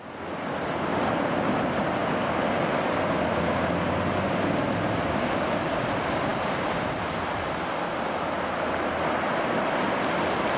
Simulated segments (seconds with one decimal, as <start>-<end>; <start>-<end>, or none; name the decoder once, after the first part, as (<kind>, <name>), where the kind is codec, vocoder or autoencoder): none